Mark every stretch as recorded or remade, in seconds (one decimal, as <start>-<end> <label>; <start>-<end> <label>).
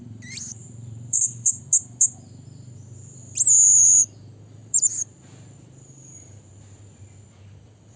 0.0-0.6 recorded; 0.6-1.6 remade; 1.6-4.6 recorded; 4.6-6.8 remade; 6.8-8.0 recorded